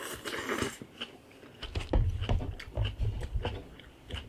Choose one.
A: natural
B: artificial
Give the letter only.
A